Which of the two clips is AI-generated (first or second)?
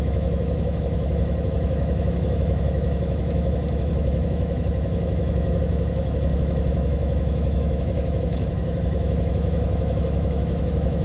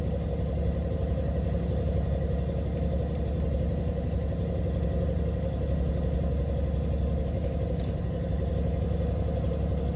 first